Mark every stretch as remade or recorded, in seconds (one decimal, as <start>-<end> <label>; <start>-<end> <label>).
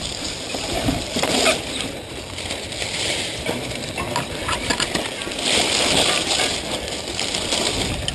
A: 0.0-4.7 remade; 4.7-7.1 recorded; 7.1-8.1 remade